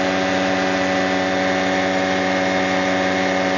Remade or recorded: recorded